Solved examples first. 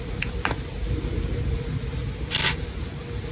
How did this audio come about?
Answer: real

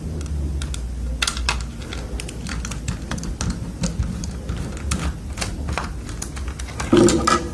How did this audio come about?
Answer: real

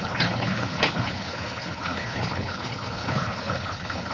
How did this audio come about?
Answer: fake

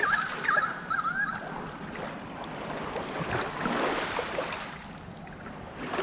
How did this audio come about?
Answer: real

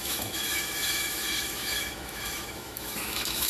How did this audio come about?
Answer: fake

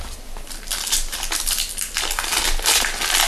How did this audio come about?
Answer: real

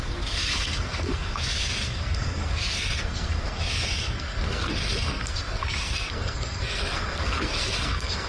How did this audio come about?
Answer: fake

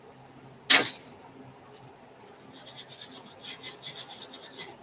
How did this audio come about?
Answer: real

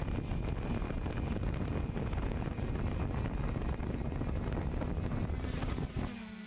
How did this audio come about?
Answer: real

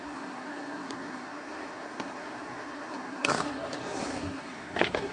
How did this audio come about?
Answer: fake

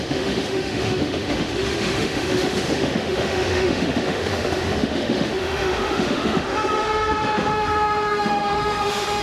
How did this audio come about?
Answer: fake